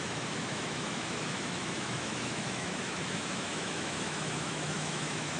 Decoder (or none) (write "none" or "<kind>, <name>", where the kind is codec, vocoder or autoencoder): autoencoder, DAC-VAE